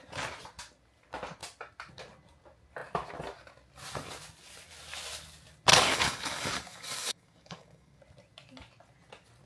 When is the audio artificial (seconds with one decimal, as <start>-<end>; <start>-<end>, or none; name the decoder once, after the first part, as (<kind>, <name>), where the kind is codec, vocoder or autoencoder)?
5.7-8.0 (codec, DAC)